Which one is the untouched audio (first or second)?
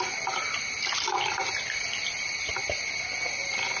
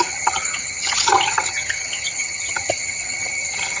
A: first